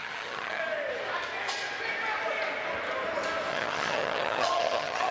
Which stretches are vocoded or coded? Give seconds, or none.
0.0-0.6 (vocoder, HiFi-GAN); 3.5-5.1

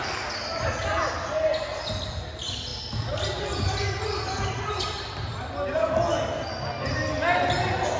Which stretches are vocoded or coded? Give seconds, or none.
none